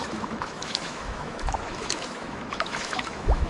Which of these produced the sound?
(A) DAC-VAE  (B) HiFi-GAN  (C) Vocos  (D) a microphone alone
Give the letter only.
A